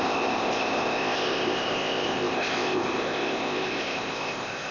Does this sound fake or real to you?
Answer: fake